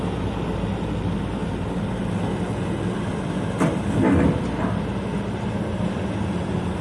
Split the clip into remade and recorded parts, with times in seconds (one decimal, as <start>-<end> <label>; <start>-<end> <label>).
0.0-6.8 recorded